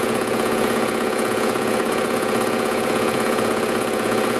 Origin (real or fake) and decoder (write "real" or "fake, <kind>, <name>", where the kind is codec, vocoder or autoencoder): fake, vocoder, Vocos